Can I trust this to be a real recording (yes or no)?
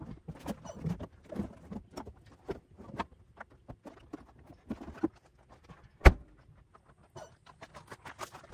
yes